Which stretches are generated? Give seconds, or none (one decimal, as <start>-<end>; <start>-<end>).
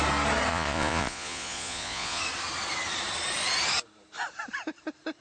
0.5-2.2